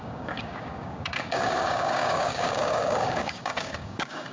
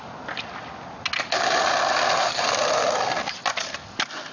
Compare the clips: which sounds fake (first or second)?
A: first